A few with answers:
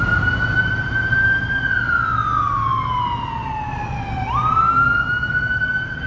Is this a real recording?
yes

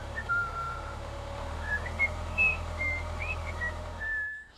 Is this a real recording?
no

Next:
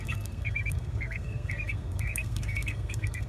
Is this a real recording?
no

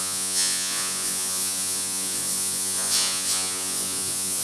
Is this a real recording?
no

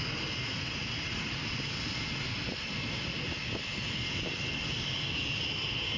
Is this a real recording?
yes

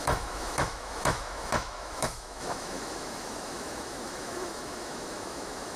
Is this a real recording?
no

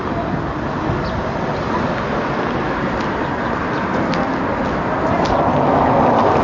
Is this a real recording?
yes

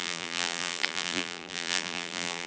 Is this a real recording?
no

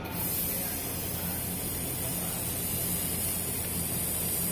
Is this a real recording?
yes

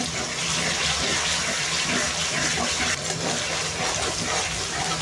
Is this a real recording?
yes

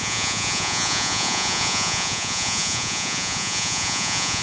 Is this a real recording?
no